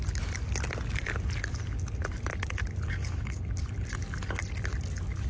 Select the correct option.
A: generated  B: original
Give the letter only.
B